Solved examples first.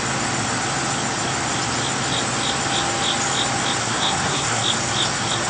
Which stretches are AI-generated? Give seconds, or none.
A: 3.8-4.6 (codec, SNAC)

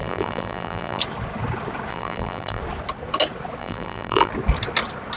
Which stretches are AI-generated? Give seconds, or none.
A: 0.0-1.0 (vocoder, BigVGAN v2); 1.9-2.6; 3.6-4.3